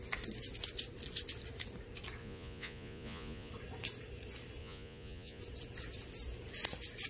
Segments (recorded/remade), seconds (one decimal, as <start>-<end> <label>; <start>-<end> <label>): 0.0-2.2 recorded; 2.2-3.5 remade; 3.5-4.6 recorded; 4.6-5.4 remade; 5.4-7.1 recorded